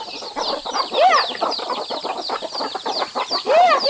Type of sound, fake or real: fake